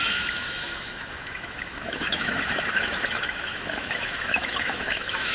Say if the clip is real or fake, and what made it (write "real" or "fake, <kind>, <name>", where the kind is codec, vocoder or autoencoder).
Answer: fake, autoencoder, DAC-VAE